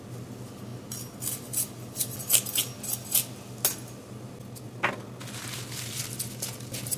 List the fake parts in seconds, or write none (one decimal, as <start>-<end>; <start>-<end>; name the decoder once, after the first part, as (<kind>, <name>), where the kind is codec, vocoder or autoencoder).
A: none